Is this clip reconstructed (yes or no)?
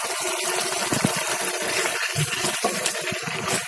no